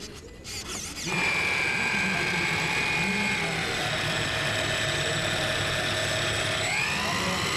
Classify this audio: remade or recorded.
recorded